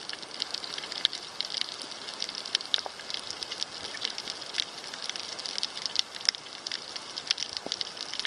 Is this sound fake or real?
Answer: real